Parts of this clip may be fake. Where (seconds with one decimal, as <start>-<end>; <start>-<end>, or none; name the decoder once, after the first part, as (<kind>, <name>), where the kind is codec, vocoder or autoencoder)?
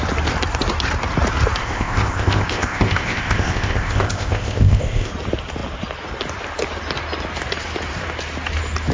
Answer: 1.6-5.1 (codec, ZipCodec)